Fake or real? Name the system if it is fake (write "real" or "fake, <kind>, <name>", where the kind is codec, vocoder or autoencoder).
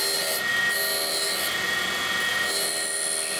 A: real